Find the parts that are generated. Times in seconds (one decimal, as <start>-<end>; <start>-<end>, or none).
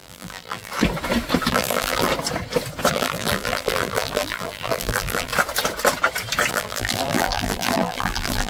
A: 0.0-0.7; 1.5-2.1; 2.9-5.3; 6.5-8.5